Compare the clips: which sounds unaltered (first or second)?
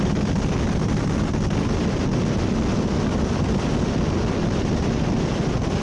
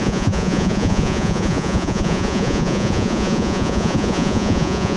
first